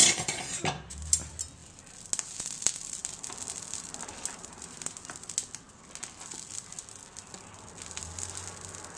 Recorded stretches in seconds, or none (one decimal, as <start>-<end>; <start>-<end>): 0.5-9.0

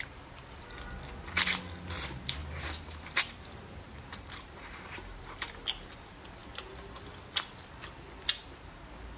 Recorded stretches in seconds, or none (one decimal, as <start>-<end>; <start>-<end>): 0.0-2.4; 5.5-8.4

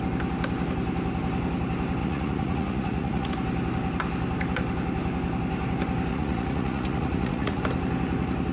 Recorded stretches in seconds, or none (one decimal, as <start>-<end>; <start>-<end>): 0.0-2.0; 3.3-6.1; 7.6-8.5